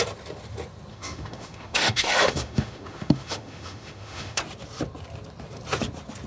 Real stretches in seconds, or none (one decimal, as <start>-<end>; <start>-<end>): 0.0-0.9; 4.4-6.3